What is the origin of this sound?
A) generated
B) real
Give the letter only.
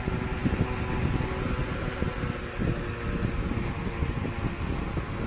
B